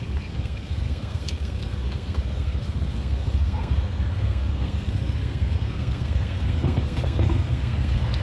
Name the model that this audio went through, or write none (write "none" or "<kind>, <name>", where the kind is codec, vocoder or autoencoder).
codec, SNAC